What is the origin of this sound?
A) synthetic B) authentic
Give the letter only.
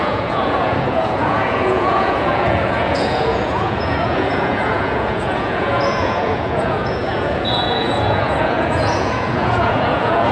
A